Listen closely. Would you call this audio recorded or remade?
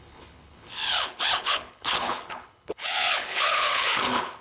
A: remade